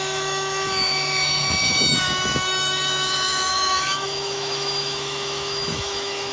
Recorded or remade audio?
remade